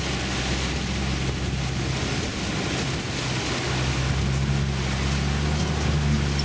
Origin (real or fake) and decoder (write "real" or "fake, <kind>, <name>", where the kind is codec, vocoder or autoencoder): real